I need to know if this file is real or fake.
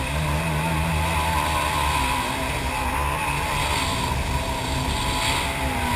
real